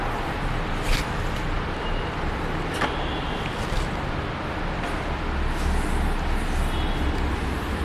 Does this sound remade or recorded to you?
recorded